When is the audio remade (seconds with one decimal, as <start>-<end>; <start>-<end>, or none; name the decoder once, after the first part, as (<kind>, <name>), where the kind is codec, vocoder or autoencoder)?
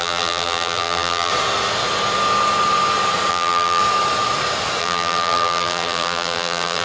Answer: 0.0-1.3 (vocoder, BigVGAN v2); 3.3-3.8; 4.8-6.8